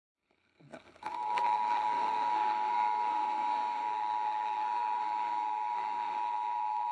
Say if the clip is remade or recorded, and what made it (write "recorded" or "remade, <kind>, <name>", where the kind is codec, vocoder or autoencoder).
remade, codec, SNAC